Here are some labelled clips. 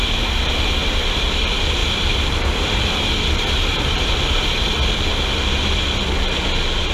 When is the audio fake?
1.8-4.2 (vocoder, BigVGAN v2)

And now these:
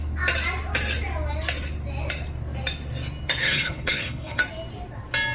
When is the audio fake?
3.4-4.4 (codec, HILCodec)

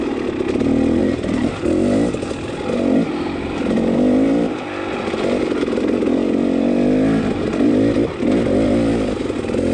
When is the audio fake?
1.0-1.6 (vocoder, BigVGAN v2)